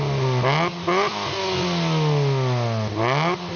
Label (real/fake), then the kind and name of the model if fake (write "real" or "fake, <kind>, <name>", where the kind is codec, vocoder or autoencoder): real